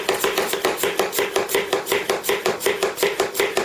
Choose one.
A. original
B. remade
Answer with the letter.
A